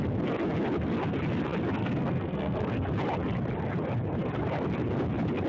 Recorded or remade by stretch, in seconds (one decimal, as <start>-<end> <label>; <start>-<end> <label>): 0.0-1.8 recorded; 1.8-2.7 remade; 2.7-5.5 recorded